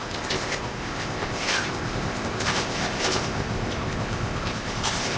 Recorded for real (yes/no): no